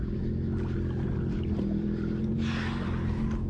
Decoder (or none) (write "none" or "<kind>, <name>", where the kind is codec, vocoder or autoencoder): none